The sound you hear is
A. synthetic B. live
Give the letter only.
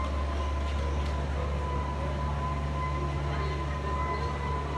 B